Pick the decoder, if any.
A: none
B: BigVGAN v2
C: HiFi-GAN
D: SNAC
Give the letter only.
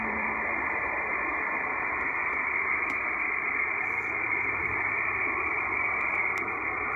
B